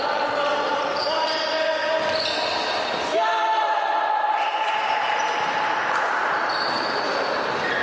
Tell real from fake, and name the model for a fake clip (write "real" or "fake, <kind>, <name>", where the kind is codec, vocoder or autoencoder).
fake, vocoder, BigVGAN v2